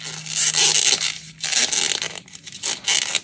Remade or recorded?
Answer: recorded